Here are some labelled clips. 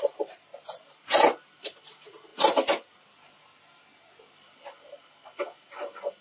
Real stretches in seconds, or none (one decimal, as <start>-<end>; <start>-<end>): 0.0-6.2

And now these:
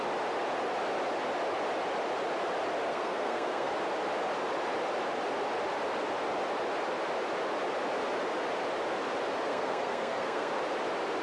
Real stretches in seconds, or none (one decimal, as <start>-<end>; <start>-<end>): 0.0-2.9; 3.7-9.5; 10.6-11.2

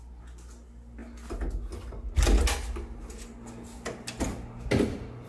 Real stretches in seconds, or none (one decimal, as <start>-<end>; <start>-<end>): 0.0-5.3

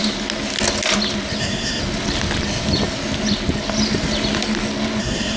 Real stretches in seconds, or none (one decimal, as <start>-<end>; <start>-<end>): 0.0-1.4; 1.8-5.0